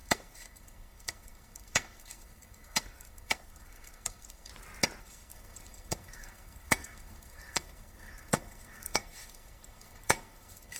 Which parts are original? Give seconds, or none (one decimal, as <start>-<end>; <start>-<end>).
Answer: 4.5-5.0